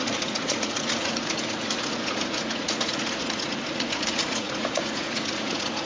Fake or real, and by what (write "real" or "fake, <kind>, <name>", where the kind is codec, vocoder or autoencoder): fake, vocoder, Vocos